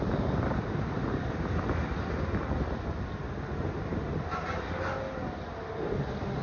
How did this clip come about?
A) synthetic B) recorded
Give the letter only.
B